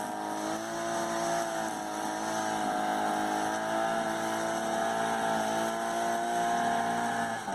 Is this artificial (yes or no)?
no